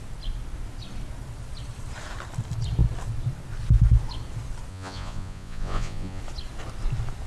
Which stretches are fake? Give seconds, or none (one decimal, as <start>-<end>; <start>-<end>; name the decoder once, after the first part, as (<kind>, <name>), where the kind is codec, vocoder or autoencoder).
4.7-6.2 (vocoder, Vocos)

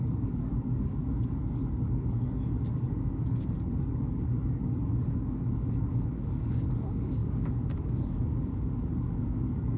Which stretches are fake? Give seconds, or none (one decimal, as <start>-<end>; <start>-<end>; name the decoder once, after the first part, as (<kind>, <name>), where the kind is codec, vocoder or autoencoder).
0.0-9.8 (codec, DAC)

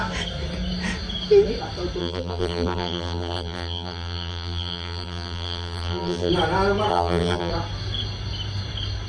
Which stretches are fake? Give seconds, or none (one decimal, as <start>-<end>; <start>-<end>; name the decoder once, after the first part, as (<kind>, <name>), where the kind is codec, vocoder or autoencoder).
2.0-6.3 (vocoder, BigVGAN v2); 6.9-7.5

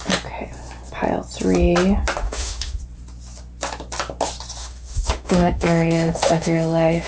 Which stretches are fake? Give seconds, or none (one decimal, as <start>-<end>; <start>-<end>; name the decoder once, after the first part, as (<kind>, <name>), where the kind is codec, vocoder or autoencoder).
2.2-2.8 (autoencoder, DAC-VAE); 4.6-7.1